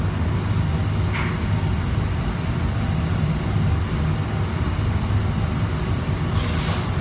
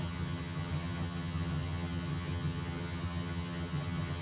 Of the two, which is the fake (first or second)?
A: second